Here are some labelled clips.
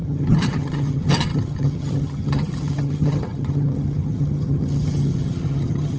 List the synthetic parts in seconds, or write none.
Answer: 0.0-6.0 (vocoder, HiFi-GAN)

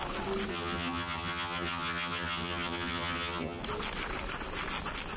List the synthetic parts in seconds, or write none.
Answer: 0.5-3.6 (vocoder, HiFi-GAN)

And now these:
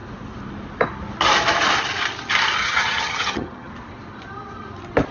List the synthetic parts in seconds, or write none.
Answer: 2.6-3.7 (vocoder, HiFi-GAN)